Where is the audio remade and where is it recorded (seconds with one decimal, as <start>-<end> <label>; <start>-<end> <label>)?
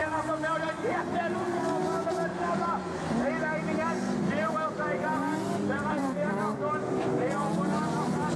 0.0-8.4 recorded